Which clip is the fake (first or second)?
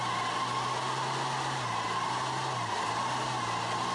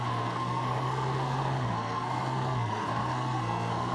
second